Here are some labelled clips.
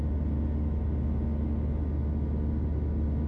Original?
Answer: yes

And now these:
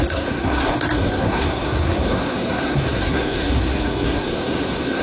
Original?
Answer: no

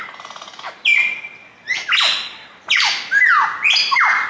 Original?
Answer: yes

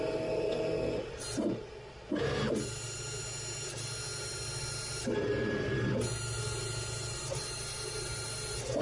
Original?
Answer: yes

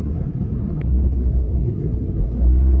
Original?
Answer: no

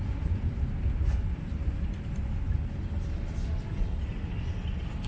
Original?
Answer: yes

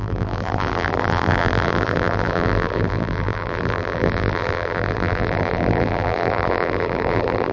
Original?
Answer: no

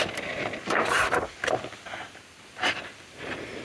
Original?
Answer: yes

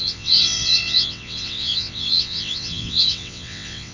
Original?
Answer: no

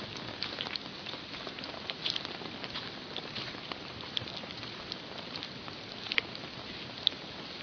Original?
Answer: yes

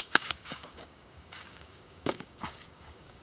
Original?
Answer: no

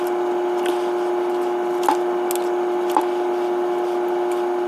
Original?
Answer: yes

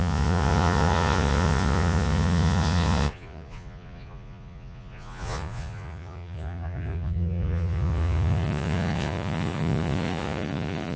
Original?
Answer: no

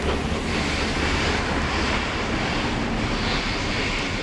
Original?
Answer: yes